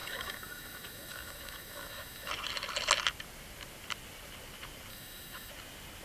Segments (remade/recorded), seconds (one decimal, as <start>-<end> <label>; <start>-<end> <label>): 0.0-2.3 remade; 2.3-4.9 recorded; 4.9-5.5 remade; 5.5-6.0 recorded

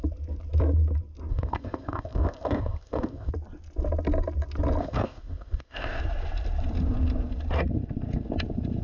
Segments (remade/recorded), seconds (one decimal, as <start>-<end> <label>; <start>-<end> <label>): 0.0-1.3 recorded; 1.3-3.3 remade; 3.3-4.8 recorded; 4.8-6.0 remade; 6.0-8.8 recorded

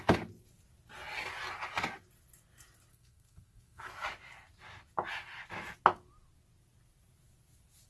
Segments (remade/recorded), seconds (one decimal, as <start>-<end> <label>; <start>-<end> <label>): 0.0-2.9 recorded; 2.9-3.9 remade; 3.9-7.9 recorded

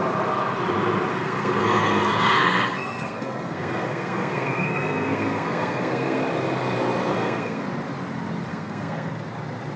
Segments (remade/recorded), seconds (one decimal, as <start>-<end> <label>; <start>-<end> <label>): 0.0-1.1 recorded; 1.1-6.2 remade; 6.2-7.1 recorded; 7.1-7.6 remade; 7.6-8.5 recorded; 8.5-9.1 remade; 9.1-9.8 recorded

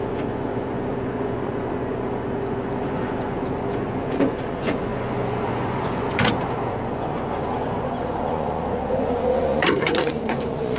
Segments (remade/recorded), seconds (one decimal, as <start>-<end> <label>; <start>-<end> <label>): 0.0-10.8 remade

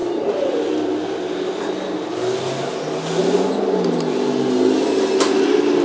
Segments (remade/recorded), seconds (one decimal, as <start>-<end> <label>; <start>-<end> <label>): 0.0-5.8 recorded

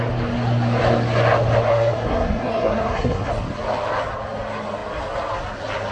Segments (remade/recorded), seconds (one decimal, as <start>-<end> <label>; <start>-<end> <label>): 0.0-1.7 recorded; 1.7-3.3 remade; 3.3-5.9 recorded

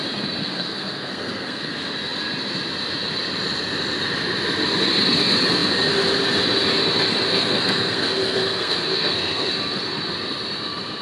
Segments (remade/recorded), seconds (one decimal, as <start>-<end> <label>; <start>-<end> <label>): 0.0-0.4 recorded; 0.4-1.7 remade; 1.7-7.3 recorded; 7.3-9.5 remade; 9.5-11.0 recorded